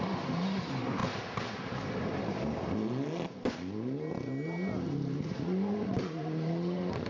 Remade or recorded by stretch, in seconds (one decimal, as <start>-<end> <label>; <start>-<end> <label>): 0.0-7.1 recorded